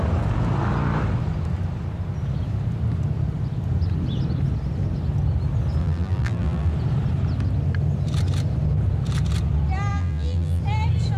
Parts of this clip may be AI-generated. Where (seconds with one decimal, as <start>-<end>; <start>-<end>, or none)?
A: 5.8-6.7; 9.9-10.6